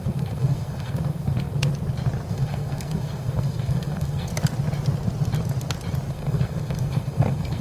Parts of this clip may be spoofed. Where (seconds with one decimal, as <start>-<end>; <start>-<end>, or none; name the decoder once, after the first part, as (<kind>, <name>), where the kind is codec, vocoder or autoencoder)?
0.0-1.7 (codec, SNAC); 2.3-4.3; 6.1-7.6